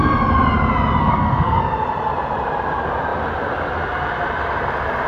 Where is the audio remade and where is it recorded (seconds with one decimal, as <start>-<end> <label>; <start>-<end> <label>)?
0.0-1.0 recorded; 1.0-1.6 remade; 1.6-5.1 recorded